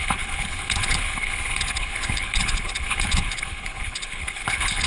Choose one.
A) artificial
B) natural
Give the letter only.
A